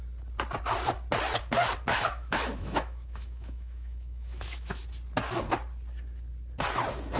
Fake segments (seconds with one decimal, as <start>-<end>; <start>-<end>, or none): 1.9-4.8